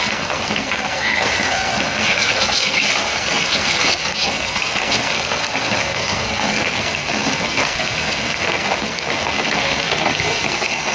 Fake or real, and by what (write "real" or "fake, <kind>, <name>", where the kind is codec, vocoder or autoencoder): fake, codec, SNAC